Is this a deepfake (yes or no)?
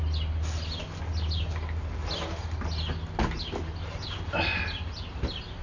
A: no